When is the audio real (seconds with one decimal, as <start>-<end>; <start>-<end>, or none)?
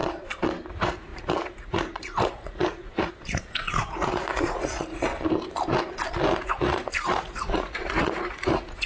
0.0-0.7; 5.1-6.4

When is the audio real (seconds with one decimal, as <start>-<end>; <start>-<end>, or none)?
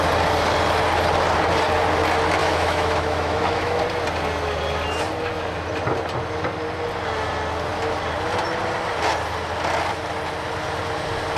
0.0-2.4; 3.8-11.4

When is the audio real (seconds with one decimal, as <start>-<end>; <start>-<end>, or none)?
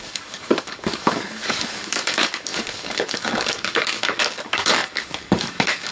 none